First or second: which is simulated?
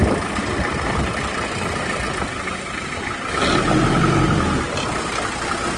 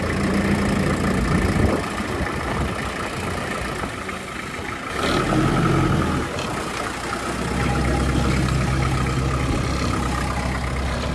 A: first